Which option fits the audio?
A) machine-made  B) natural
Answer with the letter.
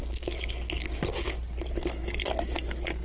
B